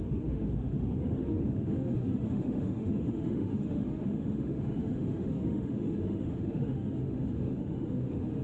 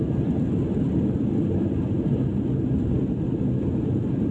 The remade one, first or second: first